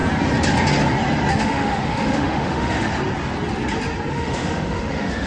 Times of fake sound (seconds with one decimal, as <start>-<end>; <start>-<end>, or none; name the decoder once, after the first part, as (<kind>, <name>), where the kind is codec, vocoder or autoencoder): 1.3-2.9 (autoencoder, DAC-VAE); 4.1-5.3